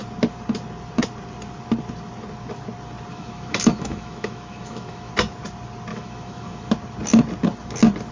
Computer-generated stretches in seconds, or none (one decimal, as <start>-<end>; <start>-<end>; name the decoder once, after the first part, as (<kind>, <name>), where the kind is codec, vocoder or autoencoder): 3.1-5.1 (autoencoder, DAC-VAE); 5.9-6.7